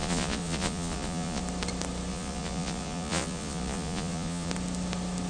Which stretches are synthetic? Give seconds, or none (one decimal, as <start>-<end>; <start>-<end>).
0.0-1.4; 2.1-4.5